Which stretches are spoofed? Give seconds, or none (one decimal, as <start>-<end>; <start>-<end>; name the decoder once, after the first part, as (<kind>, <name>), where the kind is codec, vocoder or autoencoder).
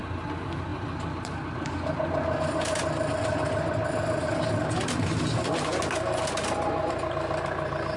none